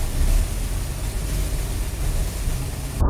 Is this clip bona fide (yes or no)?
yes